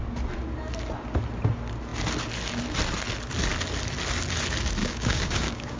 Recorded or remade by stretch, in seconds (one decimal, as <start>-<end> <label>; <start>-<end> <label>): 0.0-4.8 recorded; 4.8-5.8 remade